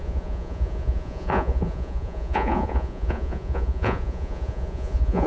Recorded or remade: remade